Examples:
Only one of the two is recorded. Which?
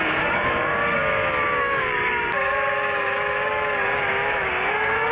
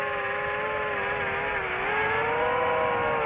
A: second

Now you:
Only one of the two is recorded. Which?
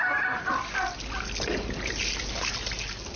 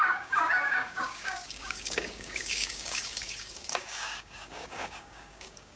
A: first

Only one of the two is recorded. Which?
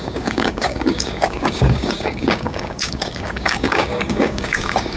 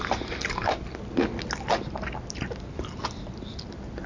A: second